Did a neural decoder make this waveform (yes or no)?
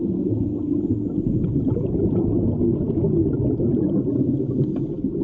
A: no